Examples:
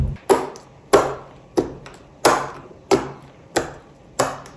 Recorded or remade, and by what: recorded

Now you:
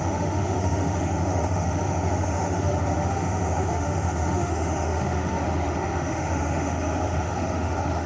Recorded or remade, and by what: remade, autoencoder, DAC-VAE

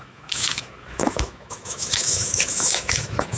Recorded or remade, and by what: remade, autoencoder, DAC-VAE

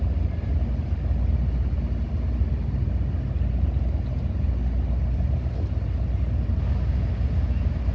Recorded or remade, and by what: recorded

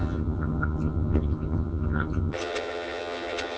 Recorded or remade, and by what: remade, vocoder, HiFi-GAN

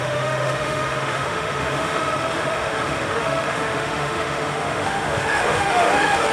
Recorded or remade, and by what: remade, autoencoder, DAC-VAE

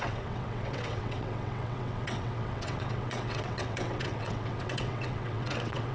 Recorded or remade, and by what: remade, vocoder, WaveNeXt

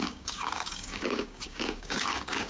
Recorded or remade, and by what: remade, codec, DAC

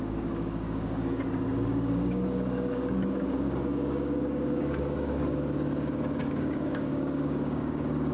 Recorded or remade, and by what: remade, codec, DAC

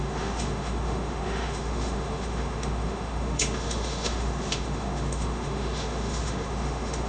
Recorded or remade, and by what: remade, autoencoder, DAC-VAE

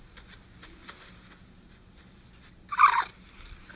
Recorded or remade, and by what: recorded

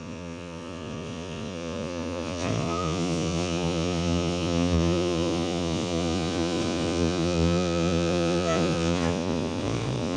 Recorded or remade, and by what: remade, vocoder, Vocos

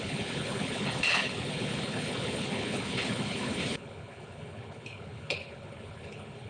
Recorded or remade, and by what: remade, codec, HILCodec